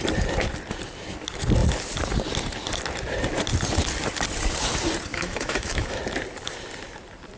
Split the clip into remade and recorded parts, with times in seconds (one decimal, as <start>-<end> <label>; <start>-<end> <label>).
0.0-5.1 recorded; 5.1-6.0 remade; 6.0-7.4 recorded